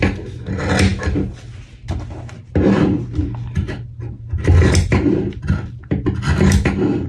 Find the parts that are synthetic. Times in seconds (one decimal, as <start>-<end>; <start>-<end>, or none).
none